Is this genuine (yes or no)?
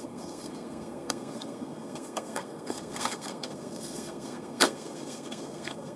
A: no